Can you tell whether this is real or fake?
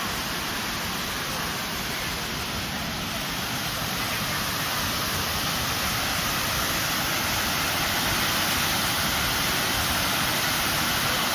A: real